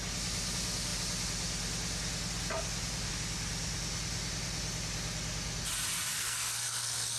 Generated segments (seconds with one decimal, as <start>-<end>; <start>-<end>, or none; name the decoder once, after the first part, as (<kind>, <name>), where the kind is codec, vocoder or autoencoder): 6.1-7.2 (codec, SNAC)